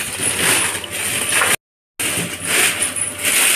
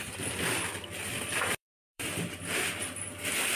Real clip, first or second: first